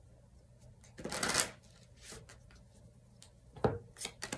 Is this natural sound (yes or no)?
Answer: yes